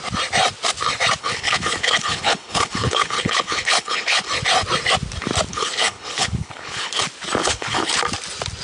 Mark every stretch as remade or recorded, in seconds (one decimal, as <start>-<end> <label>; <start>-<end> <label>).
0.0-1.2 recorded; 1.2-4.3 remade; 4.3-5.5 recorded; 5.5-7.0 remade; 7.0-7.4 recorded; 7.4-8.0 remade; 8.0-8.6 recorded